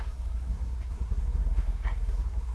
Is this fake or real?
fake